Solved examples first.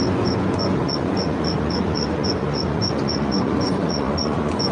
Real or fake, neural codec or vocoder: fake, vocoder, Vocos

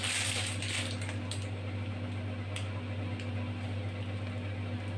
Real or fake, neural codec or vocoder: real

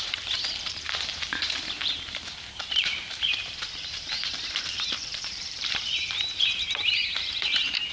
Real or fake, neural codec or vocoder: fake, vocoder, BigVGAN v2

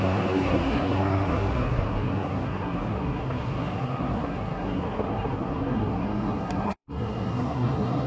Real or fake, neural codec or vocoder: fake, codec, SNAC